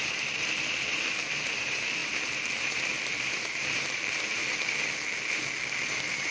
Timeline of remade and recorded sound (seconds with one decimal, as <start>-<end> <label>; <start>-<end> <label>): 0.0-4.4 remade; 4.4-5.8 recorded; 5.8-6.3 remade